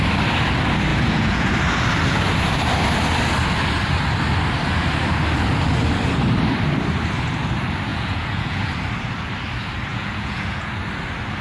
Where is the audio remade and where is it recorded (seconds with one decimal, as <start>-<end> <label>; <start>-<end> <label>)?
0.0-0.9 recorded; 0.9-1.5 remade; 1.5-7.9 recorded; 7.9-8.7 remade; 8.7-9.9 recorded; 9.9-10.7 remade; 10.7-11.4 recorded